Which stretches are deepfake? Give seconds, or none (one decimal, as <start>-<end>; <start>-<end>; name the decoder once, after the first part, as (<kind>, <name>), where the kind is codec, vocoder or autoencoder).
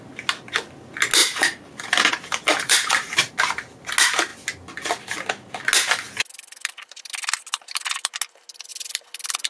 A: 1.2-2.1 (vocoder, BigVGAN v2); 2.5-3.3